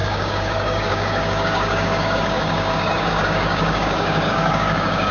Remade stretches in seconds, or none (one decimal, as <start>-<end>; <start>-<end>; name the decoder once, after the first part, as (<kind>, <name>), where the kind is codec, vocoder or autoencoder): 0.0-5.1 (codec, DAC)